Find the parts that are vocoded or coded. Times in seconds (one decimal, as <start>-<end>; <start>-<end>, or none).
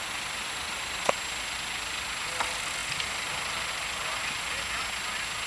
0.0-0.8